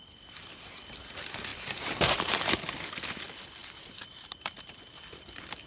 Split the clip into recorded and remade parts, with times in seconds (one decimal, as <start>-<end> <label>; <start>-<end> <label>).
0.0-1.5 recorded; 1.5-2.5 remade; 2.5-3.6 recorded; 3.6-4.4 remade; 4.4-5.7 recorded